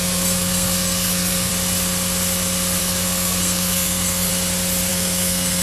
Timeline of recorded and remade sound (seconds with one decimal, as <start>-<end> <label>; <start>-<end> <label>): 0.0-1.5 remade; 1.5-2.8 recorded; 2.8-4.3 remade; 4.3-4.9 recorded; 4.9-5.6 remade